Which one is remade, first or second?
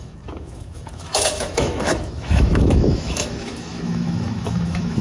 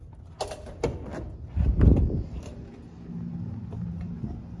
first